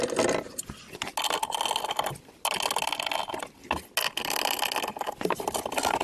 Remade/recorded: recorded